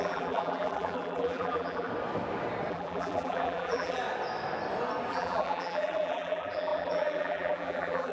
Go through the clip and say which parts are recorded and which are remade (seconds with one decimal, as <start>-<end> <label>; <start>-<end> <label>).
0.0-1.9 remade; 1.9-2.7 recorded; 2.7-4.0 remade; 4.0-5.1 recorded; 5.1-8.1 remade